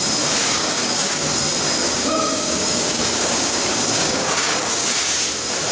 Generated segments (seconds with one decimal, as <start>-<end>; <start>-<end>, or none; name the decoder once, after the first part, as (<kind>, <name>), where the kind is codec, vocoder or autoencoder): 0.4-1.4 (codec, DAC); 1.8-5.2